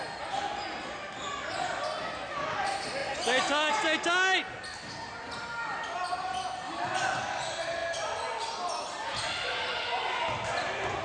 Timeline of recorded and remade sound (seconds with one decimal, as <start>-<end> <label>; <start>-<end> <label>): 0.0-11.0 recorded

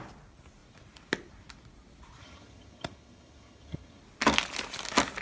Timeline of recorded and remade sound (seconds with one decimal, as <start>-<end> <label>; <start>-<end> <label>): 0.0-2.2 recorded; 2.2-4.0 remade; 4.0-5.2 recorded